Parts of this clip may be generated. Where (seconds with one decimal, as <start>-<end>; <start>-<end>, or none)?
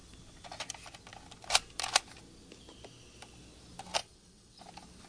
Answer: 4.0-4.6